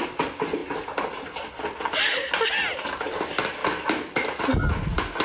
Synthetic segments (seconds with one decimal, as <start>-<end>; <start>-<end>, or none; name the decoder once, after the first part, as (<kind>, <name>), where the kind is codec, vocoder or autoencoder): none

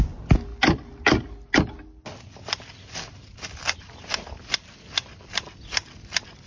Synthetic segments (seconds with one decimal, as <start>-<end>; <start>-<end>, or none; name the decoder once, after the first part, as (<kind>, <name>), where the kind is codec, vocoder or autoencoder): none

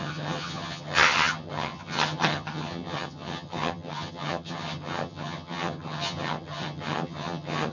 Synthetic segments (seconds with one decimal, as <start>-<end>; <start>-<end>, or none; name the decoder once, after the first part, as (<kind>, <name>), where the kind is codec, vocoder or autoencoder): 0.0-7.7 (vocoder, HiFi-GAN)

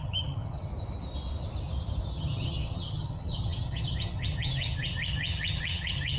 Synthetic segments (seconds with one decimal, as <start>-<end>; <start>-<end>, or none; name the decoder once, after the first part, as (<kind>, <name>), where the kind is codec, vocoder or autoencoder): 0.0-0.7 (vocoder, HiFi-GAN); 2.1-6.2

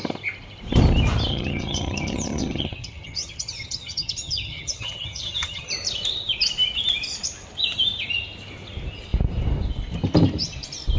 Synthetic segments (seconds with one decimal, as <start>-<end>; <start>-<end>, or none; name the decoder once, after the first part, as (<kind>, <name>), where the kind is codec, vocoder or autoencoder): 1.3-5.7 (vocoder, HiFi-GAN)